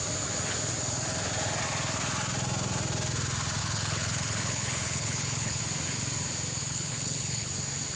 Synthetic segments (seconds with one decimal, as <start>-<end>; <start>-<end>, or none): 3.6-5.6; 6.6-7.5